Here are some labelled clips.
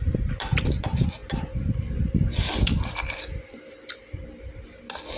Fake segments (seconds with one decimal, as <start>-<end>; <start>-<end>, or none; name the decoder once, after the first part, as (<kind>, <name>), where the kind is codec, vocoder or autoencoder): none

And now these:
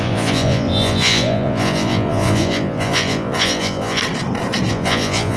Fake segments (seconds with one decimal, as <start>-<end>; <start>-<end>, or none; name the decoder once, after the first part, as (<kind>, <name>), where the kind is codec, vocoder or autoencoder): 0.0-4.0 (vocoder, Vocos); 4.7-5.4

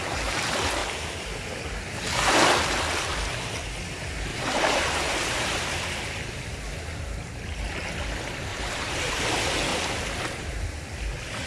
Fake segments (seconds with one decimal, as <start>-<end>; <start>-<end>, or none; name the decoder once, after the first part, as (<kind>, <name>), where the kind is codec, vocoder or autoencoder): 4.3-5.7 (vocoder, BigVGAN v2); 8.5-9.2

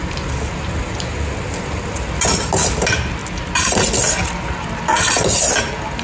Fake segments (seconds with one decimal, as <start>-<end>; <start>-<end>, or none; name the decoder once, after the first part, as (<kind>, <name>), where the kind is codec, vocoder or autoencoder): none

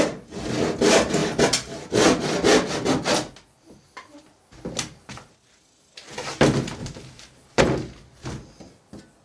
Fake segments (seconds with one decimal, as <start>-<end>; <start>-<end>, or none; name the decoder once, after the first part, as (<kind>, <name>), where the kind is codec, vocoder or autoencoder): 6.8-7.6 (vocoder, BigVGAN v2)